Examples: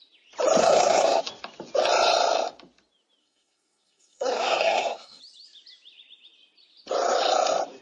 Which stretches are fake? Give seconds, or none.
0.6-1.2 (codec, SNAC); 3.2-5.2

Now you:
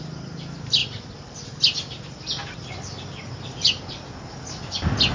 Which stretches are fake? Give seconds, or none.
none

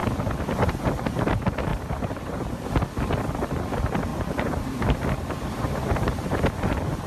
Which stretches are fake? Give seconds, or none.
1.7-2.7 (vocoder, BigVGAN v2); 4.1-6.5

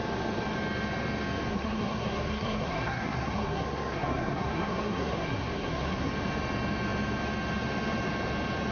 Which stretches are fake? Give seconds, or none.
1.5-6.1 (codec, SNAC)

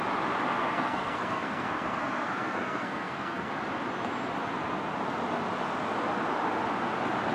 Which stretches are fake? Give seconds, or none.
0.5-3.5 (codec, SNAC)

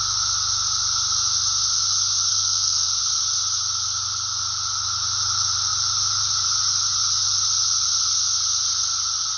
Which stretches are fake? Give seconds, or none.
2.3-3.0 (codec, SNAC)